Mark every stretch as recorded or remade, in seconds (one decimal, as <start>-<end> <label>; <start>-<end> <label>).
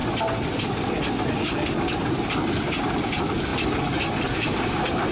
0.0-5.1 recorded